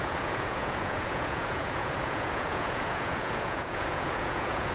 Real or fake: fake